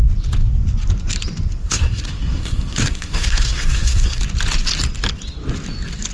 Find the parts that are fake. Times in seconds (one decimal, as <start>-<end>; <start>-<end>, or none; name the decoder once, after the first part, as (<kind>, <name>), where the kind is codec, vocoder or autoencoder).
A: 1.6-4.2 (codec, SNAC)